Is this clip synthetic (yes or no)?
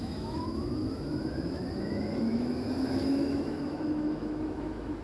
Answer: yes